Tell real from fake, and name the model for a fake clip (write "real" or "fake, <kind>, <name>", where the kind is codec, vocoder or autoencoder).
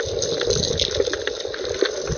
real